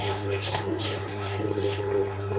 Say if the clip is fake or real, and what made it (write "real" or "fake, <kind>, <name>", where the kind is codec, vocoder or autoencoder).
fake, codec, SNAC